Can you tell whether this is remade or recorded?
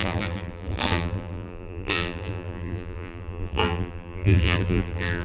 remade